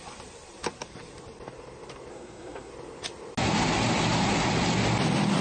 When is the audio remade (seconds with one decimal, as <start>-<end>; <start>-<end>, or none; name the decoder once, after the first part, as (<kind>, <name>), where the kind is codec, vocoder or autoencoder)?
2.1-2.7 (codec, SNAC)